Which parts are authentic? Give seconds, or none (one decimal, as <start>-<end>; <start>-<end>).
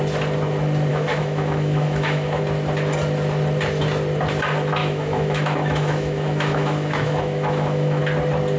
0.0-0.9; 2.4-4.8; 8.0-8.6